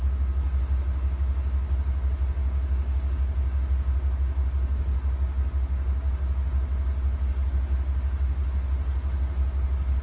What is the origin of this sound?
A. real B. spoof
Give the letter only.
A